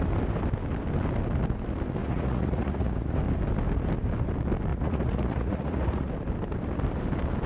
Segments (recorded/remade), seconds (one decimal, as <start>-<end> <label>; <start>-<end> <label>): 0.0-2.0 recorded; 2.0-3.2 remade; 3.2-4.7 recorded; 4.7-6.1 remade; 6.1-7.5 recorded